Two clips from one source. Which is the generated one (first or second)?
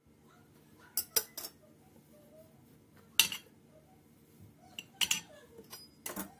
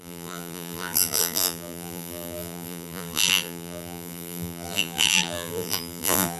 second